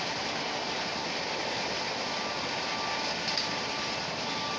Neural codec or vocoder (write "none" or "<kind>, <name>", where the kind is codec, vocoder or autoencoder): none